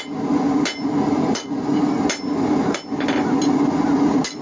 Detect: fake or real real